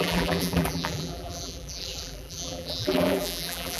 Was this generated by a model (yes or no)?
yes